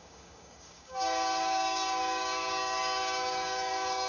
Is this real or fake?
fake